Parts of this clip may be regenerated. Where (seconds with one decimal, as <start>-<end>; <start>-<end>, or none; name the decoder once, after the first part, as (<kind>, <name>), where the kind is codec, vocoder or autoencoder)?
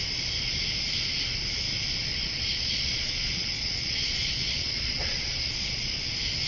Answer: 2.1-6.0 (vocoder, Vocos)